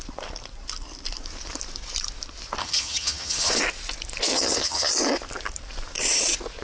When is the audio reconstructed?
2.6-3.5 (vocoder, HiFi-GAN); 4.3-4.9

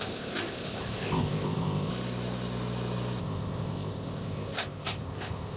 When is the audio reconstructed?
0.0-1.9 (codec, ZipCodec); 3.2-5.6

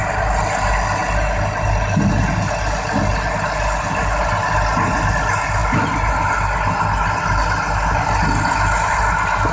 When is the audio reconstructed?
none

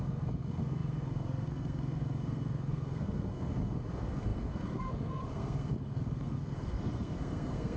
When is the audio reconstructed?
0.0-7.8 (codec, SNAC)